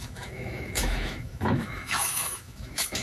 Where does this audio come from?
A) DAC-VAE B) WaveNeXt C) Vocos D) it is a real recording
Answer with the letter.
A